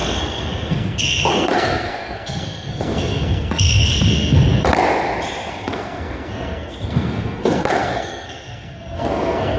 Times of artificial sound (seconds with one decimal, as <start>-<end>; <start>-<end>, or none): 0.0-4.5; 5.5-9.6